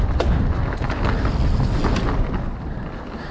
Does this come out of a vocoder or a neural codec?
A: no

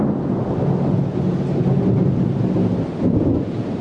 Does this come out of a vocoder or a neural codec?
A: no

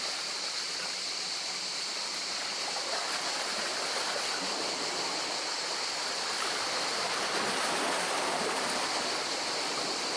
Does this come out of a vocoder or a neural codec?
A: no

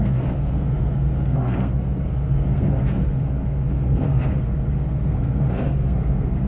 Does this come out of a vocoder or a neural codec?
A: yes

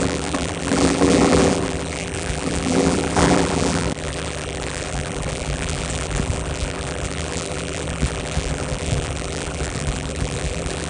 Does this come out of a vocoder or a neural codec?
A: yes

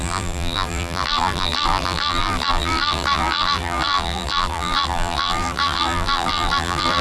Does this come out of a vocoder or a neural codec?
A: yes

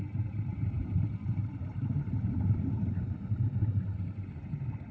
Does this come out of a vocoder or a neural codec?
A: yes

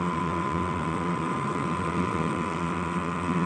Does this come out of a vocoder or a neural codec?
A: yes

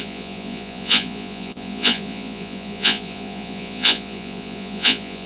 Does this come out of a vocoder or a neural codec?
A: yes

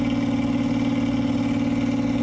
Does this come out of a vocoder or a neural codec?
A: no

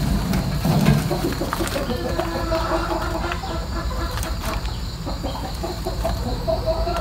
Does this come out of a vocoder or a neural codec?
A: yes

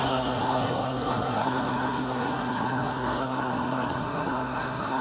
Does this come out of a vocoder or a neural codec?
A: yes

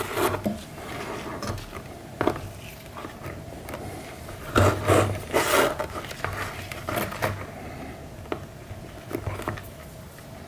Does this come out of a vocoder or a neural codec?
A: no